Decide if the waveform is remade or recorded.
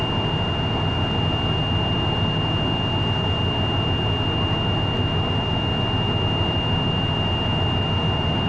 recorded